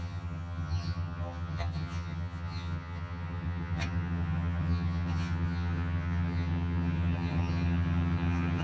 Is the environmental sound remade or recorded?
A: remade